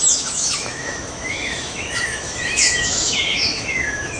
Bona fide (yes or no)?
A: no